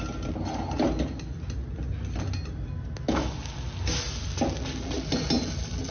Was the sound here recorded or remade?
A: recorded